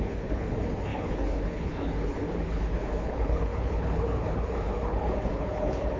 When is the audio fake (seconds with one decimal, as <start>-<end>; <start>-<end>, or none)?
0.0-6.0